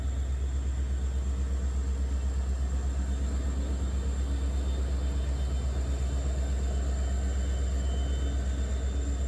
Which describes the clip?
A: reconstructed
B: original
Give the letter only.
B